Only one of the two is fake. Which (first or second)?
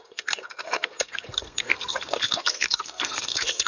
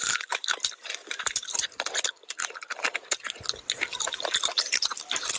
first